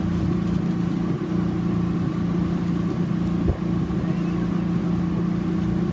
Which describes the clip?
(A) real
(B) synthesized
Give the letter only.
A